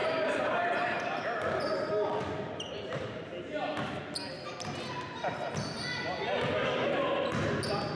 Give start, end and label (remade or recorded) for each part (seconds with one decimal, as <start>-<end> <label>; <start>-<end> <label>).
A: 0.0-2.2 remade; 2.2-8.0 recorded